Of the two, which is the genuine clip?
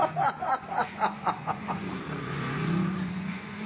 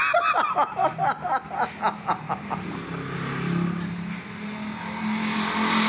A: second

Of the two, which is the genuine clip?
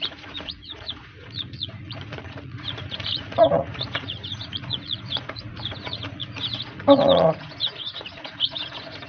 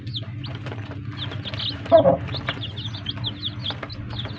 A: second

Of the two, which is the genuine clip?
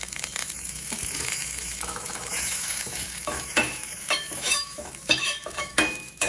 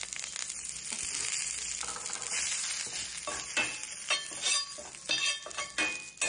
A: second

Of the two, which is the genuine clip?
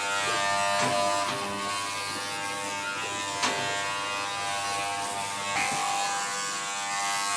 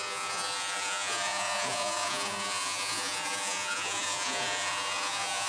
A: first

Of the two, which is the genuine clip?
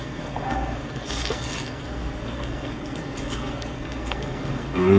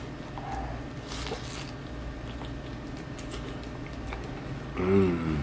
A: second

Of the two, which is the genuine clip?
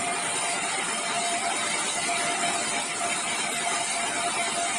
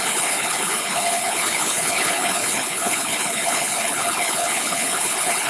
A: first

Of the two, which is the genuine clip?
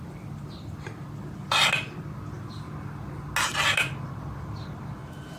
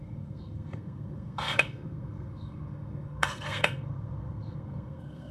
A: first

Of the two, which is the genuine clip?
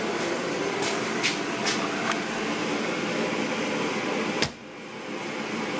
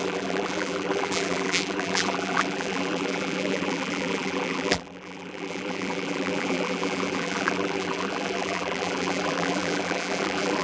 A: first